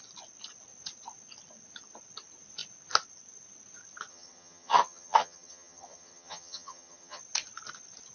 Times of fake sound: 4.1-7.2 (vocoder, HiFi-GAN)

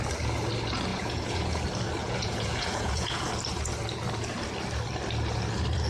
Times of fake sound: 0.9-1.6 (vocoder, Vocos); 2.0-3.3

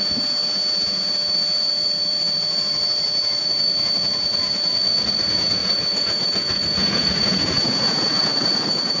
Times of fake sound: 0.0-9.0 (vocoder, Vocos)